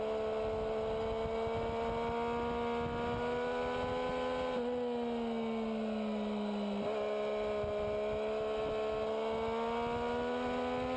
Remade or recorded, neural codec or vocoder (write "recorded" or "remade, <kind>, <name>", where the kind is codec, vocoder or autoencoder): recorded